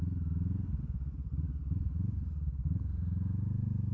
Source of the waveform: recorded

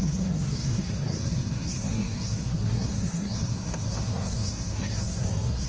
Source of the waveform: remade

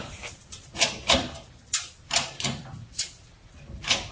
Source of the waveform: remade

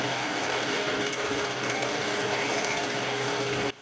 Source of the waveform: remade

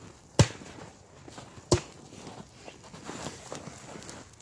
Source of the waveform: recorded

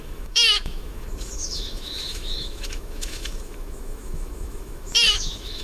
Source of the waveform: remade